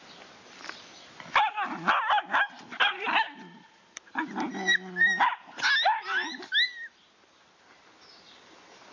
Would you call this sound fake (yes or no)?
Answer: no